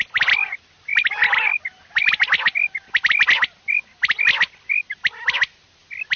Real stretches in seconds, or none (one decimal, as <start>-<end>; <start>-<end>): 0.0-6.2